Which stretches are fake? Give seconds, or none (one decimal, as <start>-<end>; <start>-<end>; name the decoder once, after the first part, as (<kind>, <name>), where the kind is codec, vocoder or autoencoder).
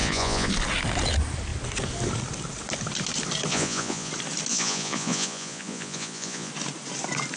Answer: 0.0-0.5 (vocoder, Vocos); 3.5-4.1; 4.5-6.5